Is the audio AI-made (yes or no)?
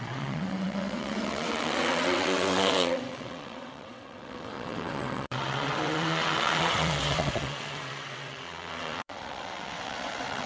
yes